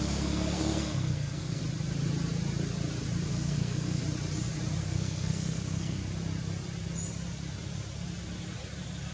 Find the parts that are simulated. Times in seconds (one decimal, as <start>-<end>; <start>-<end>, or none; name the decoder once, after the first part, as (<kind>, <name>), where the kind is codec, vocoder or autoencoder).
0.0-1.6 (codec, SNAC); 3.3-4.0; 4.8-6.0